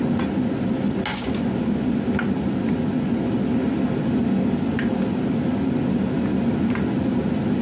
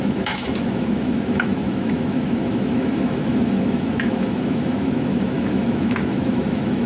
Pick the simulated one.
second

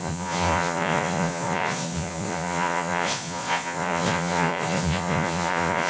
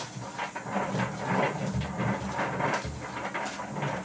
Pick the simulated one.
first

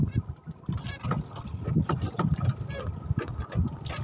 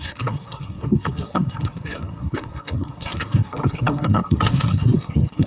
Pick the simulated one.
second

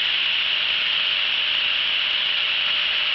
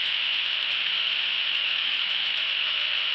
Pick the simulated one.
second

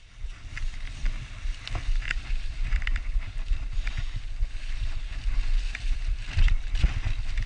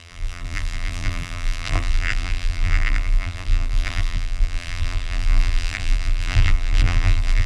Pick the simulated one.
second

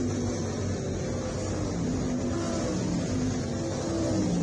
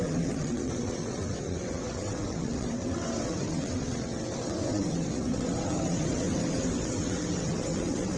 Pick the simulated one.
second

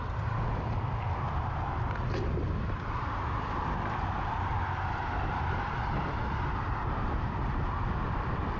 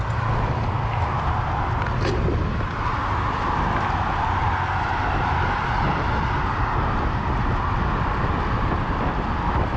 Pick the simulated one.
first